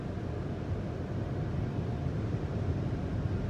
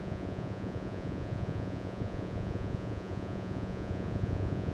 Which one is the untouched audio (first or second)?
first